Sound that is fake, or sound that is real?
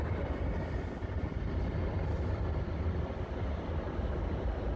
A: real